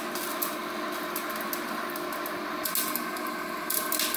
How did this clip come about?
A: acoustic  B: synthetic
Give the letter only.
A